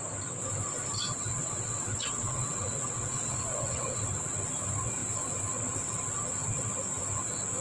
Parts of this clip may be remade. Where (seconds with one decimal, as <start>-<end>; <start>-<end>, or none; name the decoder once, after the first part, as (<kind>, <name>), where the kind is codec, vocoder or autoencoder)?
1.4-4.0 (vocoder, WaveNeXt)